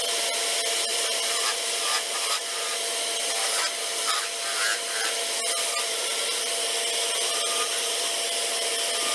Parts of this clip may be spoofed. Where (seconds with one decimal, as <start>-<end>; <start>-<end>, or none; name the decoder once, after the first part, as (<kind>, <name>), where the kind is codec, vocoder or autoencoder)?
0.9-2.4 (vocoder, BigVGAN v2); 4.5-6.1